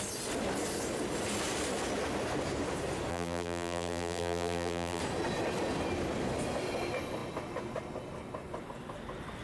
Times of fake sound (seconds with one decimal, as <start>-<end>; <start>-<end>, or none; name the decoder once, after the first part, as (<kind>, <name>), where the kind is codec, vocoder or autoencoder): 3.1-5.0 (vocoder, BigVGAN v2)